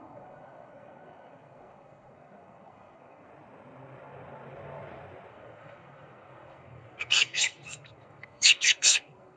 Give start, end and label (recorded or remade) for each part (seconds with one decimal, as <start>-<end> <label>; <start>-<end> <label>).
0.0-3.3 remade; 3.3-5.3 recorded; 5.3-9.4 remade